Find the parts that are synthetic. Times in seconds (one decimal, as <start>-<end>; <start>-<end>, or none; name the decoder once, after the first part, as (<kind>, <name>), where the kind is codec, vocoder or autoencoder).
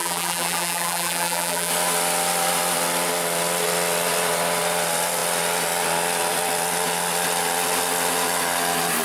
0.0-1.7 (vocoder, BigVGAN v2)